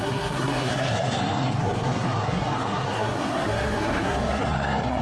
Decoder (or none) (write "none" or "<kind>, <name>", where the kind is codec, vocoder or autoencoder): codec, SNAC